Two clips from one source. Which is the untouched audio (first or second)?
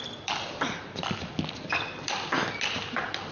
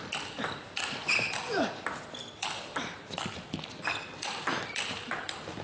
first